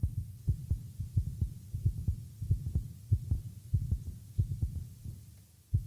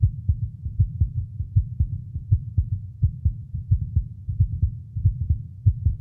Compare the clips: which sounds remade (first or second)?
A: second